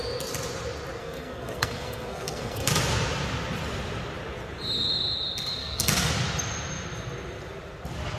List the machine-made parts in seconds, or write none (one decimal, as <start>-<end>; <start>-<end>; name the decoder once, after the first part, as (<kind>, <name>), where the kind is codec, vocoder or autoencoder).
1.0-2.7 (codec, SNAC); 5.6-6.1